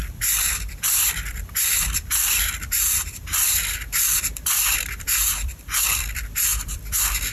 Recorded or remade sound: remade